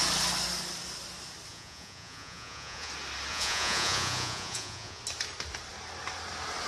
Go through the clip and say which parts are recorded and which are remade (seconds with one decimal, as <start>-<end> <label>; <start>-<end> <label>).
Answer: 0.0-1.5 recorded; 1.5-2.9 remade; 2.9-3.3 recorded; 3.3-5.0 remade; 5.0-6.7 recorded